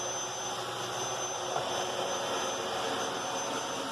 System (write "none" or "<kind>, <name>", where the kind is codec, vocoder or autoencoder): none